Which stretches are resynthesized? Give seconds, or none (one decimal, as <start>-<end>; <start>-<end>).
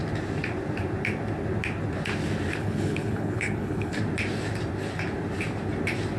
2.6-4.0